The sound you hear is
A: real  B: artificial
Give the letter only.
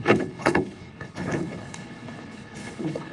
B